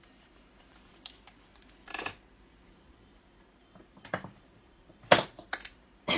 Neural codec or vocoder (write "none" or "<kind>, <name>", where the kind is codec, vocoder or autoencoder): vocoder, BigVGAN v2